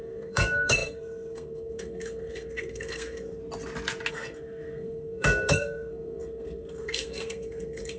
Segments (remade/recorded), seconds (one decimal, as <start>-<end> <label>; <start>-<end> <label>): 0.0-3.4 remade; 3.4-4.1 recorded; 4.1-8.0 remade